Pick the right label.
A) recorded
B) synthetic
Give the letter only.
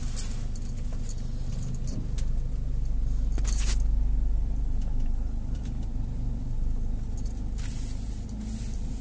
A